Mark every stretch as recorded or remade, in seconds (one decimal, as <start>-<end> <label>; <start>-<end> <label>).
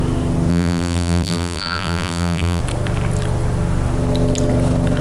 0.0-0.5 recorded; 0.5-2.6 remade; 2.6-5.0 recorded